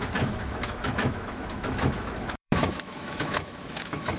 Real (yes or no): no